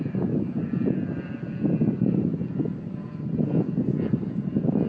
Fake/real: real